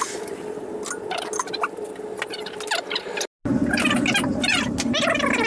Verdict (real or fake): real